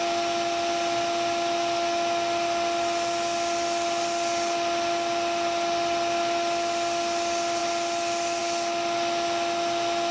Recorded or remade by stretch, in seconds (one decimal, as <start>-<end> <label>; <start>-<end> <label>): 0.0-10.1 recorded